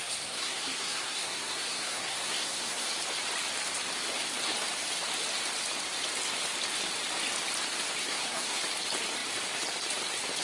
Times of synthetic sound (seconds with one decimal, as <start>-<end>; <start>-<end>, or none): 0.0-2.9; 8.0-8.6